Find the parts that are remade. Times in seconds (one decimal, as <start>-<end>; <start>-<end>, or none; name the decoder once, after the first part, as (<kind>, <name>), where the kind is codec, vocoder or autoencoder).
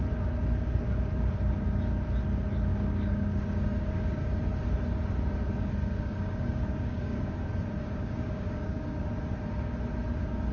2.7-4.3 (codec, DAC); 5.8-7.3; 7.8-9.1